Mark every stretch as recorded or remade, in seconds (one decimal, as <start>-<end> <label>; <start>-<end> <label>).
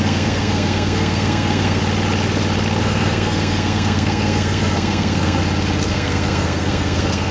0.0-1.8 remade; 1.8-2.8 recorded; 2.8-5.4 remade; 5.4-5.9 recorded; 5.9-7.3 remade